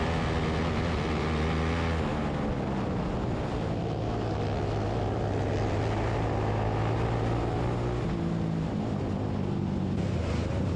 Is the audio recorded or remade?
recorded